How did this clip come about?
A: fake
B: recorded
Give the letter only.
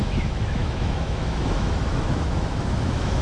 A